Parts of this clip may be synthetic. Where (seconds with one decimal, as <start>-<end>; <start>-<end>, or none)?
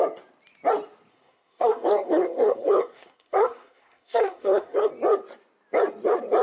1.1-4.9